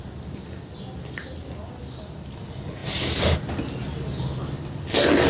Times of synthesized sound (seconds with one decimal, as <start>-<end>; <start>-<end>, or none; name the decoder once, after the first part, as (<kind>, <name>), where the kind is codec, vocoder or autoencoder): none